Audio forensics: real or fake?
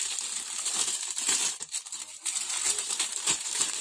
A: fake